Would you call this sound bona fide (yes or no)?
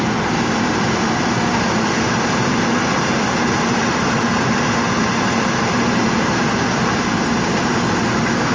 no